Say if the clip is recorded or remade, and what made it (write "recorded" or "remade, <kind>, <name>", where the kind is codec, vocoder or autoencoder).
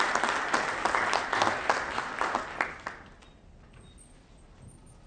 recorded